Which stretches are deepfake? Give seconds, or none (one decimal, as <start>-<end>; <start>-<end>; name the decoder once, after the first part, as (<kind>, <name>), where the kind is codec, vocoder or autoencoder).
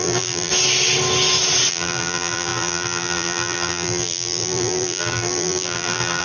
0.0-0.5 (vocoder, BigVGAN v2); 1.7-6.2